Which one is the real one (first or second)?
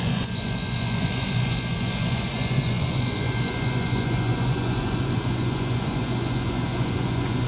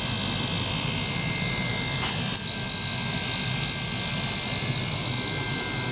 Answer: second